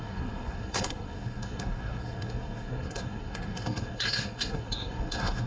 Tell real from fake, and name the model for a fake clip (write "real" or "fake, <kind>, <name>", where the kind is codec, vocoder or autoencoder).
fake, codec, SNAC